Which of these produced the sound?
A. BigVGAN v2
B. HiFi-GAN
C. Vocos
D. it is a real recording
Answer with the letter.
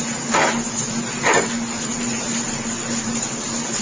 D